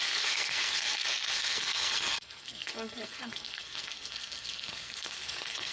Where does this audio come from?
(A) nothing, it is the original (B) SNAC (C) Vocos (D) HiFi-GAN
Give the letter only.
B